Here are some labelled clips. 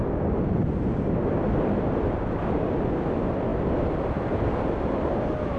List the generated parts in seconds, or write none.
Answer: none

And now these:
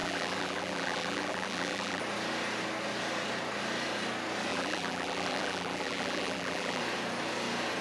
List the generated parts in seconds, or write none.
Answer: 0.0-2.0; 4.5-6.8

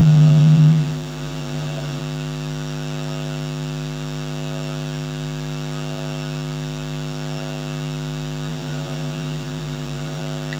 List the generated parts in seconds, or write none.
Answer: 0.0-2.0; 8.5-10.2

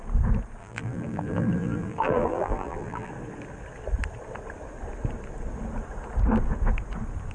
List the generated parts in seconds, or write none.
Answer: 0.6-3.1

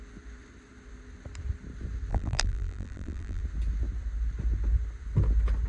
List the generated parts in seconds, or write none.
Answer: 2.1-3.4

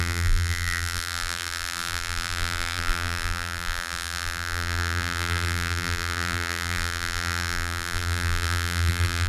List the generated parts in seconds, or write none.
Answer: 0.0-9.3